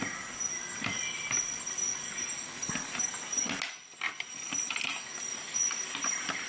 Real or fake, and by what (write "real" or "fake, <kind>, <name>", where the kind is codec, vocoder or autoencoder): real